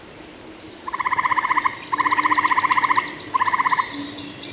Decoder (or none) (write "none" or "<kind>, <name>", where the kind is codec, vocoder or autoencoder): vocoder, BigVGAN v2